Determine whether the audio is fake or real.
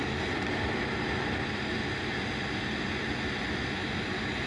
real